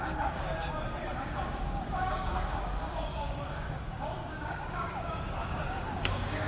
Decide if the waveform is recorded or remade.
remade